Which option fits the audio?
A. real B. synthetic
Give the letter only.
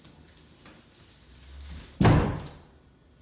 A